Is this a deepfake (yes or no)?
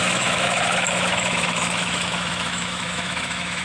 yes